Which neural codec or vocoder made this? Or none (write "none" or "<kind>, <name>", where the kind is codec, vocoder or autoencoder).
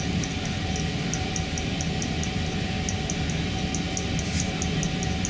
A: none